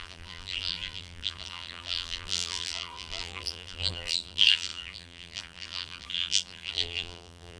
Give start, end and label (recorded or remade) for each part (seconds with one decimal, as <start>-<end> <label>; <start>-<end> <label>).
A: 0.0-7.6 remade